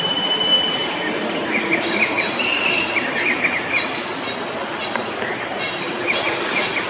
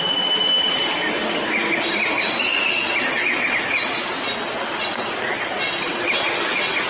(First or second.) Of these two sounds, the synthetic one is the first